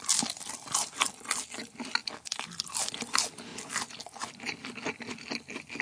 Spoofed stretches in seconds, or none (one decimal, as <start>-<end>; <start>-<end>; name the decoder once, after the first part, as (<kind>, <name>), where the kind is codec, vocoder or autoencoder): none